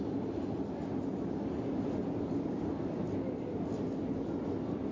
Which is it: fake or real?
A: real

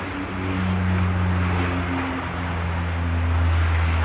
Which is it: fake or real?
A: real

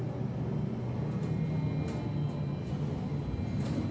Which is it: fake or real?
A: real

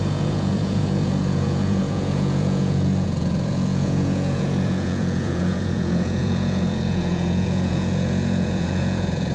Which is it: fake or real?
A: fake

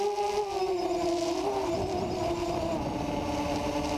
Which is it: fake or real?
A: real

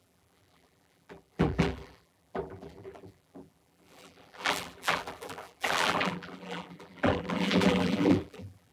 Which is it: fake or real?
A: fake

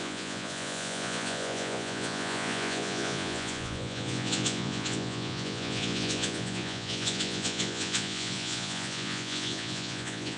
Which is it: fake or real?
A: fake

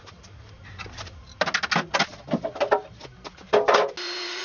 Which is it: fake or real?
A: real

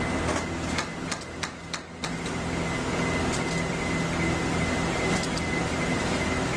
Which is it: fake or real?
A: real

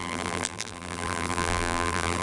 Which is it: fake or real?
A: fake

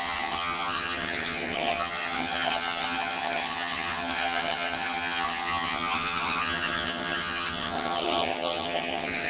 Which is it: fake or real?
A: fake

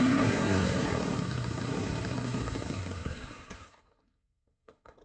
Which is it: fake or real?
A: fake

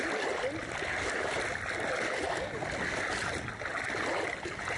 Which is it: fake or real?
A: real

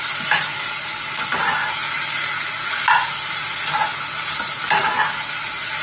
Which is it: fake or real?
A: real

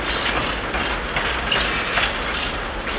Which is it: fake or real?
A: real